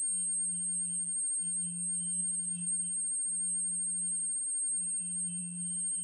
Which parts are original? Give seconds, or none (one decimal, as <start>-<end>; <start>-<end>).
0.0-2.2; 2.8-6.0